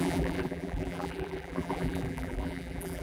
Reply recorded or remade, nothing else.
remade